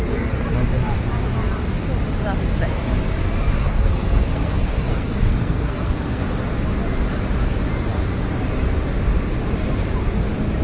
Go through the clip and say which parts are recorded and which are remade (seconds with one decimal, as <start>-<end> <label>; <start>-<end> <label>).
0.0-3.6 recorded; 3.6-6.2 remade; 6.2-10.6 recorded